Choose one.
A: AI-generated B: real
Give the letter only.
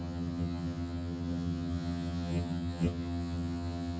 A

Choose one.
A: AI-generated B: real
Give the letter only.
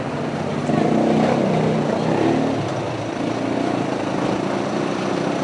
B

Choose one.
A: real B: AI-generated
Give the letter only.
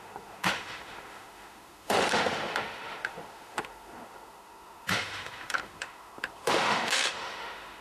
B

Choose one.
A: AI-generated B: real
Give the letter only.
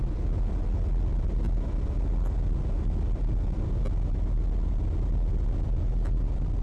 B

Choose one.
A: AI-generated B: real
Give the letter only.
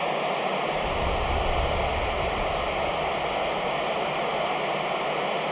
B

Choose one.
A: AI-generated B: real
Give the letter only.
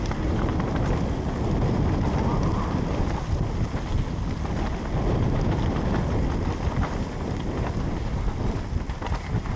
B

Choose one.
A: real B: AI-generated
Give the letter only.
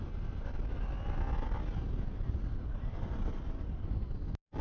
A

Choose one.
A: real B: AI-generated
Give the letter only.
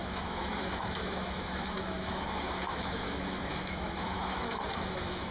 B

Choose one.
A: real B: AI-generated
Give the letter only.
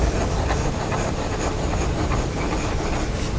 A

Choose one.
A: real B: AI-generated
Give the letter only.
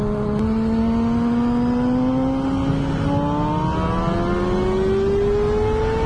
A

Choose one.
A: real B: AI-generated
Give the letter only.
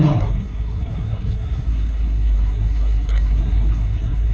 B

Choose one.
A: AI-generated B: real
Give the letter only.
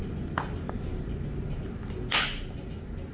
B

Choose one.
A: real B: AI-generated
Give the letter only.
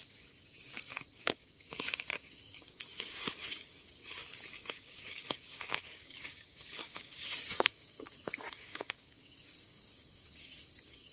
B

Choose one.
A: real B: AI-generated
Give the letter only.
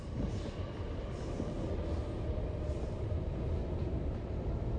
A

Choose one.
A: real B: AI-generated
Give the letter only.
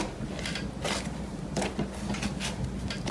A